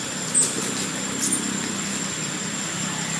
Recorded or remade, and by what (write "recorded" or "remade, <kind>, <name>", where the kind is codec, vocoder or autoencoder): recorded